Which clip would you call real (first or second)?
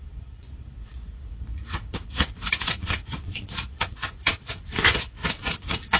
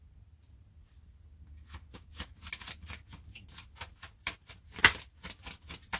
second